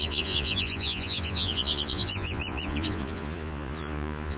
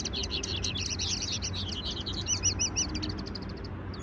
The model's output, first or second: first